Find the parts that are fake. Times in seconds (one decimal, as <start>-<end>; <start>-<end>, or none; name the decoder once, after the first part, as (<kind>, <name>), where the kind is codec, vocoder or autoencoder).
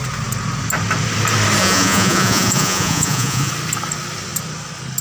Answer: 1.6-3.5 (vocoder, Vocos)